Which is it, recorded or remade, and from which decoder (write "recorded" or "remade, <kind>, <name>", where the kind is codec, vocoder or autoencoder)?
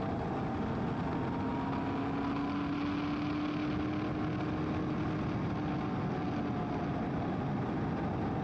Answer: recorded